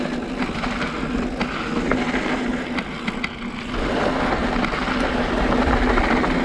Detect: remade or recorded recorded